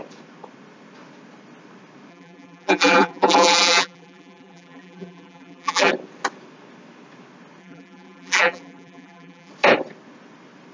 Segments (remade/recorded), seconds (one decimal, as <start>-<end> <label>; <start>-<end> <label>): 0.0-2.1 recorded; 2.1-5.9 remade; 5.9-7.6 recorded; 7.6-9.5 remade; 9.5-10.7 recorded